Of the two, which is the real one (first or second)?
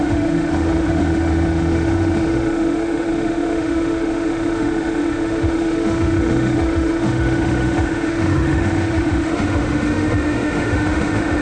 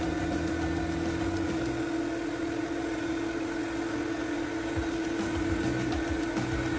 second